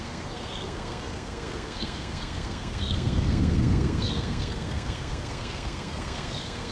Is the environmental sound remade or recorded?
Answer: remade